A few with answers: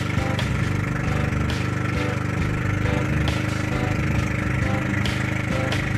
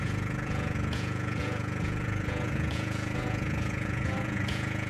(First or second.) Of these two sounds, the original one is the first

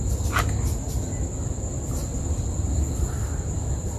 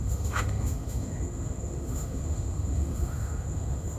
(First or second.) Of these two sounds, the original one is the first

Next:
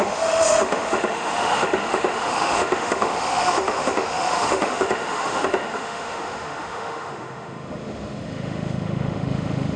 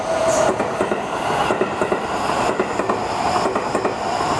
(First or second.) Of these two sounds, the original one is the second